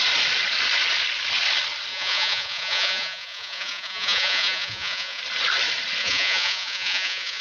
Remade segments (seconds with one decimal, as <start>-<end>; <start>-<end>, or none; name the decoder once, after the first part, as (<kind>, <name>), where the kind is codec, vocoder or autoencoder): 1.9-5.2 (vocoder, Vocos); 6.0-7.4